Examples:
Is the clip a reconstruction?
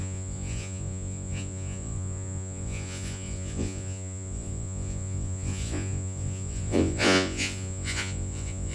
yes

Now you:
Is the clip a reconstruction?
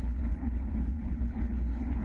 yes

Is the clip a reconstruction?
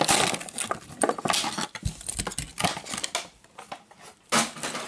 no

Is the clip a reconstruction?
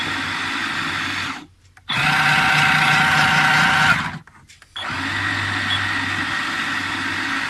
no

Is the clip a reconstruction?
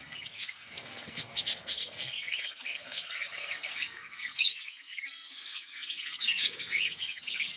yes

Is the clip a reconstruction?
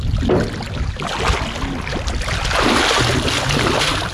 no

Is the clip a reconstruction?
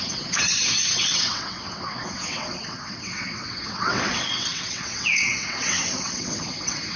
yes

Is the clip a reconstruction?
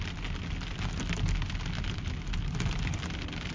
no